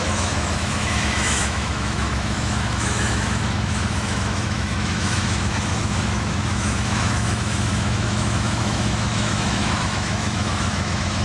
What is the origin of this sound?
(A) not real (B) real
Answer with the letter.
A